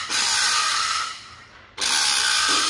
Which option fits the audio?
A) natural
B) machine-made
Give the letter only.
A